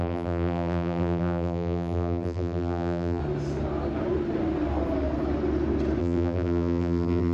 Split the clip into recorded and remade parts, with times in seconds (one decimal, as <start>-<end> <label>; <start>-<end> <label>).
0.0-3.2 remade; 3.2-6.0 recorded; 6.0-7.3 remade